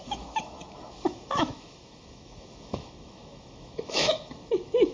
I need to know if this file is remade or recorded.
remade